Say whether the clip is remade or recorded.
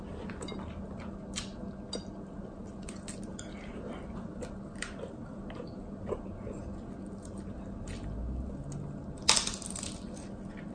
recorded